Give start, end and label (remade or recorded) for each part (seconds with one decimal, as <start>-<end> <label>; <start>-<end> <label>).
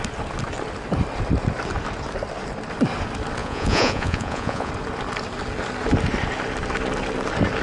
0.0-3.4 recorded; 3.4-4.7 remade; 4.7-7.6 recorded